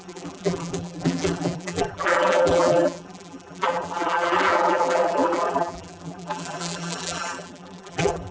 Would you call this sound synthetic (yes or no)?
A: yes